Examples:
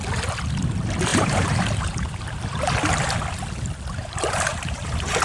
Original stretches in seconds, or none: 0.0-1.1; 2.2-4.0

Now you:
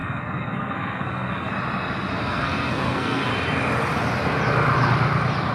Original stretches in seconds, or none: 1.5-2.2; 3.3-5.5

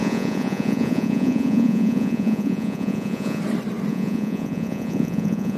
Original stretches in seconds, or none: 3.4-3.9

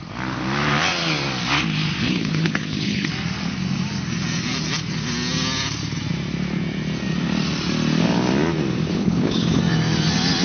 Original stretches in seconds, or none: 0.0-2.0; 3.1-8.9; 9.6-10.4